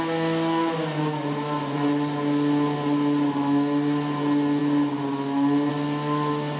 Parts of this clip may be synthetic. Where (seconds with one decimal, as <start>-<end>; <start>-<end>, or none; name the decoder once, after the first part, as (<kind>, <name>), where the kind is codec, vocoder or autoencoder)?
none